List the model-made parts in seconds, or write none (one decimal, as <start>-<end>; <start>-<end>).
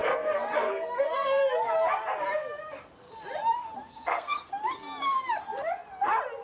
0.0-1.4; 3.9-4.5